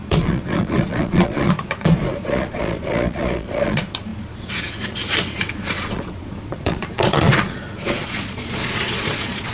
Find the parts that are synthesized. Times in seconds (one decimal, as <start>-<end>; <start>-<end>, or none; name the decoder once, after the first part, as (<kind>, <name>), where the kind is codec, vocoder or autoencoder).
0.0-9.5 (vocoder, Vocos)

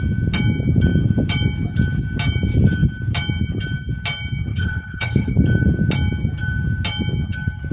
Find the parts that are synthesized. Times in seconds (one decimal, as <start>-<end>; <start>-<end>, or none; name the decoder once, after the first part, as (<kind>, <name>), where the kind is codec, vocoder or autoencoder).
4.5-5.3 (codec, HILCodec)

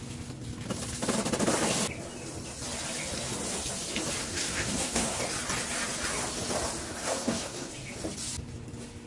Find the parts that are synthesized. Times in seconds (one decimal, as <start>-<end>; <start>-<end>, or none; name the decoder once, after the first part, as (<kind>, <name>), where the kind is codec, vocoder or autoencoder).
4.2-5.2 (codec, SNAC); 7.0-7.7

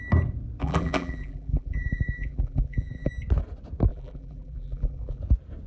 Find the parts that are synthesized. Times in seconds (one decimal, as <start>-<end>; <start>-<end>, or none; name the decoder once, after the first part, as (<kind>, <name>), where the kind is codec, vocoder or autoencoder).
0.6-3.1 (vocoder, BigVGAN v2); 3.9-5.2

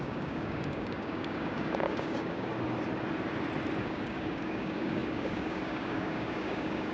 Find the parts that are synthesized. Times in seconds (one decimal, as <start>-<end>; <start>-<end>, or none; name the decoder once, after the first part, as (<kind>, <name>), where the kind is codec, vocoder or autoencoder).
0.0-2.5 (codec, DAC); 3.8-6.9